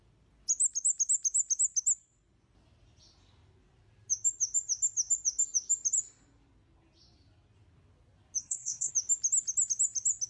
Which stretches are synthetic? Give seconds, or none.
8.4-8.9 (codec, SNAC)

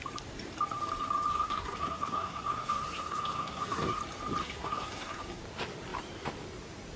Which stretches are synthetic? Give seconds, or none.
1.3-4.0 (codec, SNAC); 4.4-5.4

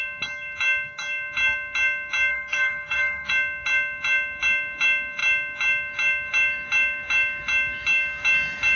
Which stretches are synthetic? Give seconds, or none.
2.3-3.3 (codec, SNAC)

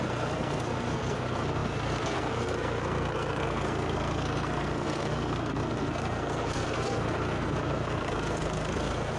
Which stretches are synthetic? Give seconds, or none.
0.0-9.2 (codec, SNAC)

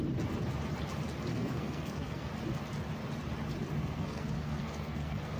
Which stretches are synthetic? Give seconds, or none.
1.3-2.3 (codec, SNAC); 3.8-5.4